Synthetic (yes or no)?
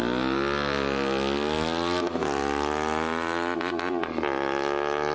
no